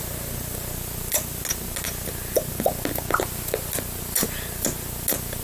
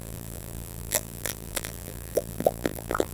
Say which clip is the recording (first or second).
first